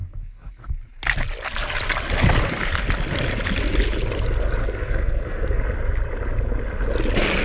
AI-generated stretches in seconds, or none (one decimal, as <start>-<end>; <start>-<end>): 0.0-0.7; 4.6-5.6